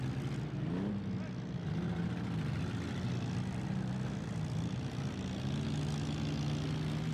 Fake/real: real